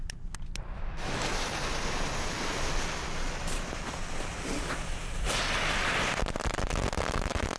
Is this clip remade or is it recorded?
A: recorded